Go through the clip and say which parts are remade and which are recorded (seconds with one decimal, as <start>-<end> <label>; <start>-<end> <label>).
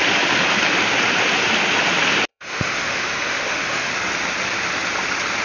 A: 0.0-2.3 recorded; 2.3-3.9 remade; 3.9-5.4 recorded